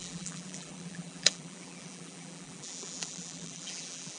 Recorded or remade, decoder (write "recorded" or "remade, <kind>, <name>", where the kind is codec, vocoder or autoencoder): remade, vocoder, BigVGAN v2